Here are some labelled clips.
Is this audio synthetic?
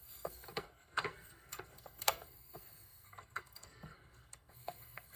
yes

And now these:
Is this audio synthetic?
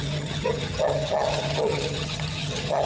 yes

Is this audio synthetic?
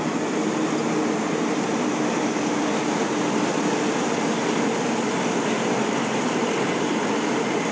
no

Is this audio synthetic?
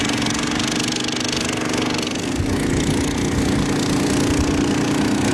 no